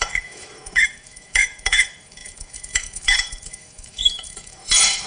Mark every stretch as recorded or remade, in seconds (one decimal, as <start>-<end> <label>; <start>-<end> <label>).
0.0-5.1 remade